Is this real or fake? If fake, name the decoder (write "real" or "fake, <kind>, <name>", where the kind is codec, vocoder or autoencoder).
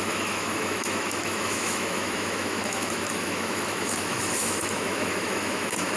fake, autoencoder, DAC-VAE